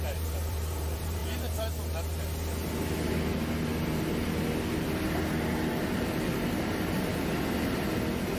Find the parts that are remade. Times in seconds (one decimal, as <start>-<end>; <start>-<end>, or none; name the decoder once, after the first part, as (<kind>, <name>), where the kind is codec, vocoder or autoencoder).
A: 0.0-1.2 (vocoder, BigVGAN v2); 5.8-7.1